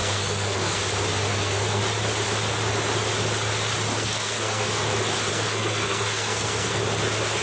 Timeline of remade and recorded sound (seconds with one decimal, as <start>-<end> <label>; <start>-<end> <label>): 0.0-0.8 remade; 0.8-1.3 recorded; 1.3-1.8 remade; 1.8-3.9 recorded; 3.9-4.7 remade; 4.7-5.3 recorded; 5.3-6.8 remade; 6.8-7.4 recorded